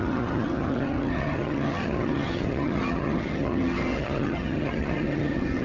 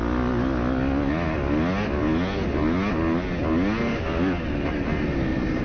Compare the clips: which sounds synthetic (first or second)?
first